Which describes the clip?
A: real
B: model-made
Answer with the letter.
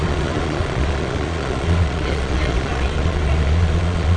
B